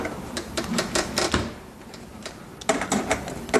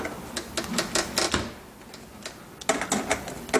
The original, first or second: second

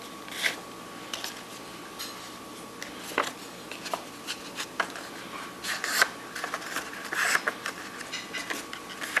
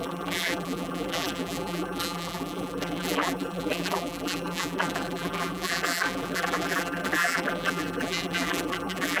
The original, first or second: first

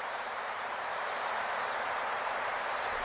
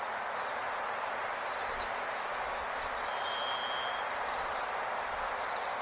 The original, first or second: second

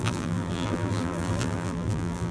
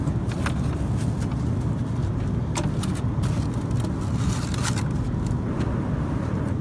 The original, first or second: second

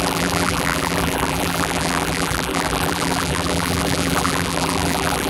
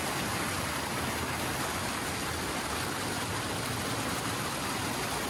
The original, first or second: second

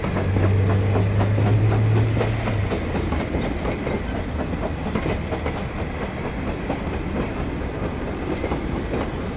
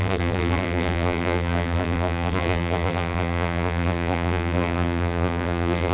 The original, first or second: first